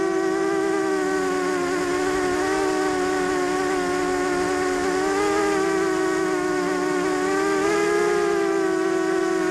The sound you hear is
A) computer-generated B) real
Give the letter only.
B